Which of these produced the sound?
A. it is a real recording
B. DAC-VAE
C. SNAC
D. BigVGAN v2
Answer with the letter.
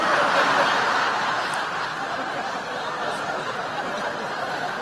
D